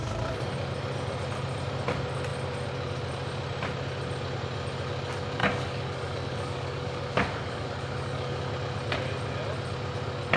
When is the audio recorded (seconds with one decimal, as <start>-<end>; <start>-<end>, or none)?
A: 0.0-5.4; 8.4-10.4